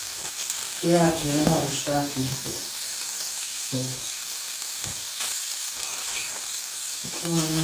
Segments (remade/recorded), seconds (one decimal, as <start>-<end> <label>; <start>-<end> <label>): 0.0-7.6 remade